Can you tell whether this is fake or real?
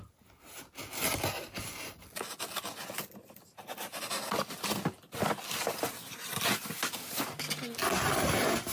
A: real